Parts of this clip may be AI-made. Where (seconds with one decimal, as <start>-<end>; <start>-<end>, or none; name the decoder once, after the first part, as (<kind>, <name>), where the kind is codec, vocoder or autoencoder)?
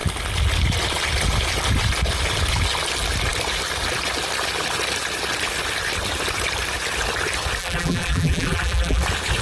7.6-9.0 (vocoder, BigVGAN v2)